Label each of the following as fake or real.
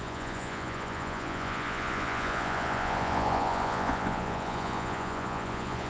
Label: fake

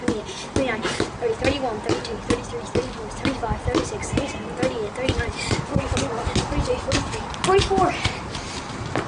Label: real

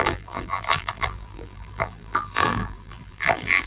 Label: fake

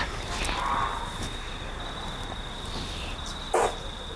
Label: real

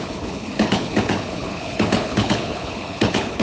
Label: fake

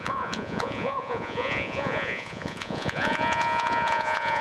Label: fake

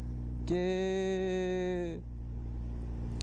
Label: real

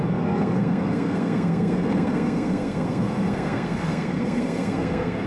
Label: fake